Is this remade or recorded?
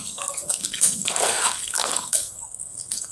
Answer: remade